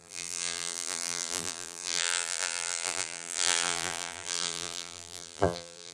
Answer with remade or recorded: remade